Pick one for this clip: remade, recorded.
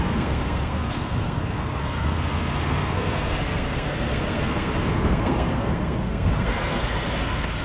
remade